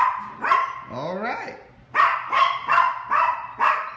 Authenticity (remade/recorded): recorded